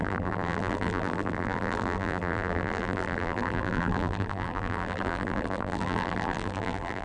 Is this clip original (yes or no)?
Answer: no